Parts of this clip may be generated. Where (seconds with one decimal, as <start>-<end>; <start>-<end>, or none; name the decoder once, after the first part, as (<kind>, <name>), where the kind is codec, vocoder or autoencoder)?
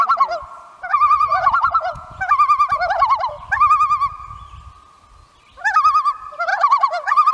0.9-2.2 (vocoder, Vocos); 6.5-7.3